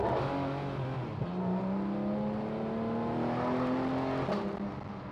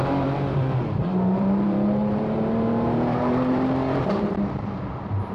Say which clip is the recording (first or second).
first